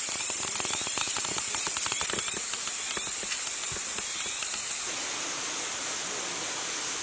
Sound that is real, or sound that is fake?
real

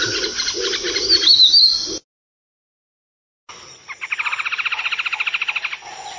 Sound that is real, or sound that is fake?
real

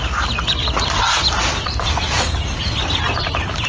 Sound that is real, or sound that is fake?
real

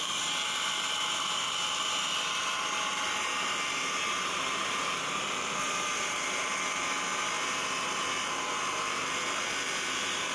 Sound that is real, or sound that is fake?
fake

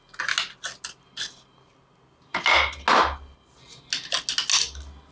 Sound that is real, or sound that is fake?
real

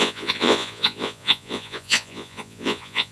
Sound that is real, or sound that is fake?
fake